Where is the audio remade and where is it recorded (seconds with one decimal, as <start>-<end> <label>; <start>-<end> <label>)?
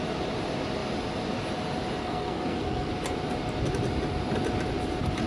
0.0-2.0 recorded; 2.0-2.9 remade; 2.9-5.3 recorded